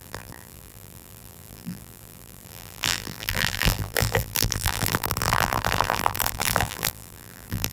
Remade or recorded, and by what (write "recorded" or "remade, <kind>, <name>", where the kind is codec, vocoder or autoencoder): remade, vocoder, BigVGAN v2